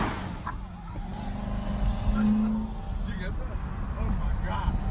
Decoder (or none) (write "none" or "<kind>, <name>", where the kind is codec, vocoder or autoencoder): none